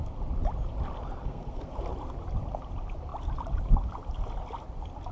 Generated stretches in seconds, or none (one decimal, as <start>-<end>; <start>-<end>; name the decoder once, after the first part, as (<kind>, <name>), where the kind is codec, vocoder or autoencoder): 1.2-1.7 (codec, SNAC)

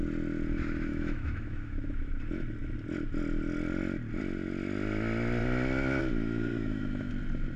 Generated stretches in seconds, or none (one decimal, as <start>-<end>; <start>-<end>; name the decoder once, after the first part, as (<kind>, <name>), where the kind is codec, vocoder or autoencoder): 0.9-2.2 (autoencoder, DAC-VAE); 6.5-7.1

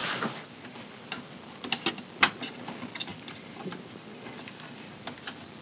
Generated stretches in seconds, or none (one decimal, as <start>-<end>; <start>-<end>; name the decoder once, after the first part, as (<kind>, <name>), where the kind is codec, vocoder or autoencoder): 3.1-5.0 (vocoder, BigVGAN v2)

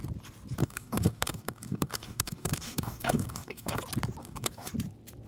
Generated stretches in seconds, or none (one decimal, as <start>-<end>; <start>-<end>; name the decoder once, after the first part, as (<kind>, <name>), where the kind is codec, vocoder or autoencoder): 0.6-3.8 (codec, DAC); 4.2-4.7

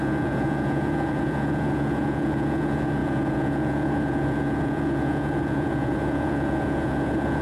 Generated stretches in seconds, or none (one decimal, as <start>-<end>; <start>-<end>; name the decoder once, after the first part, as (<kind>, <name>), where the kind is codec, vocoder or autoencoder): 0.0-7.4 (vocoder, Vocos)